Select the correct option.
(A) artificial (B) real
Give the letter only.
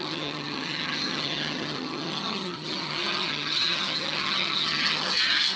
A